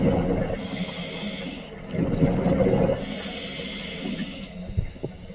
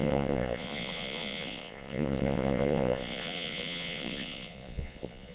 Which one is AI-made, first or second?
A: second